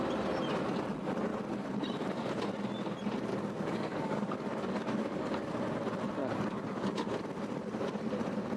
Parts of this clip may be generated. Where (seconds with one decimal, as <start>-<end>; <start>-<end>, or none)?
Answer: 3.3-5.5; 6.2-7.2